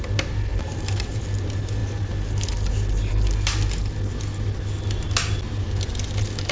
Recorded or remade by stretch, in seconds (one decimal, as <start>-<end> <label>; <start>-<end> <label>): 0.0-0.5 recorded; 0.5-1.2 remade; 1.2-6.5 recorded